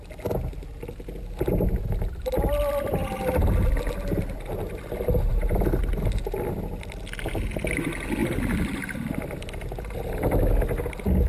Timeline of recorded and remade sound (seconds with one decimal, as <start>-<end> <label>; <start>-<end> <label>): 0.0-11.3 recorded